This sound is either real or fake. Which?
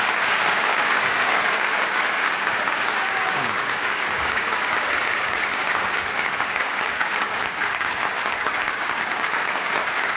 fake